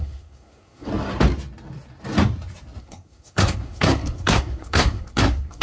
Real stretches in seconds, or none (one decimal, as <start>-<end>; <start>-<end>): 0.9-2.8